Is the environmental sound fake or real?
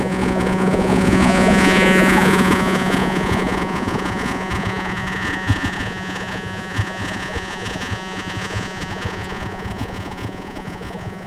fake